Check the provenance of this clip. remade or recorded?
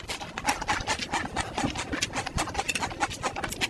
recorded